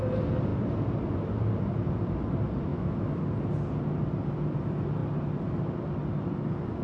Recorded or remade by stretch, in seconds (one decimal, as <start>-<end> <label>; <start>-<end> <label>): 0.0-2.7 recorded; 2.7-3.2 remade; 3.2-6.8 recorded